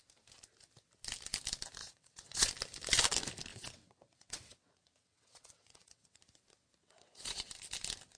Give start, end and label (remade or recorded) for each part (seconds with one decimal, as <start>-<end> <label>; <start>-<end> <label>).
0.0-1.8 recorded; 1.8-2.5 remade; 2.5-3.5 recorded; 3.5-6.2 remade; 6.2-6.8 recorded; 6.8-7.5 remade; 7.5-8.2 recorded